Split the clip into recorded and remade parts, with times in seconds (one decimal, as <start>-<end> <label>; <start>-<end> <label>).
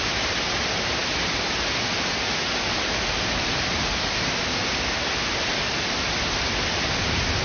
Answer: 0.0-7.4 recorded